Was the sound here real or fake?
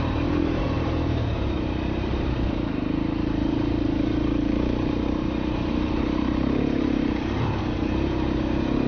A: fake